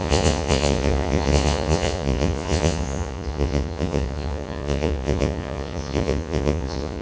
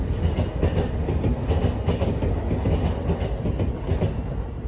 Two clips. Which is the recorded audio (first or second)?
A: second